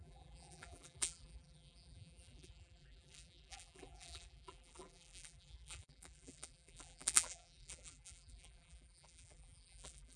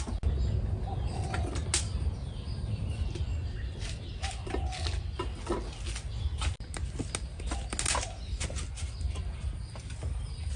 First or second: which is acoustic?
second